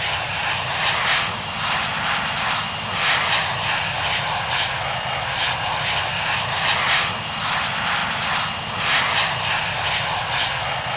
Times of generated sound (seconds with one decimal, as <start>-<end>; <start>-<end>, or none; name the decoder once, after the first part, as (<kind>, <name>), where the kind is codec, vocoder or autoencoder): 0.4-3.2 (vocoder, BigVGAN v2)